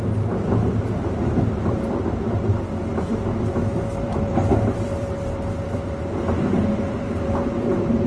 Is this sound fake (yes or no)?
yes